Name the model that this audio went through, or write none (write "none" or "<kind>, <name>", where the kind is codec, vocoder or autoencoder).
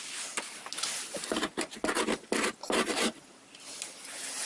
none